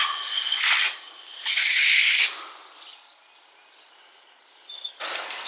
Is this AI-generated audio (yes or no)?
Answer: no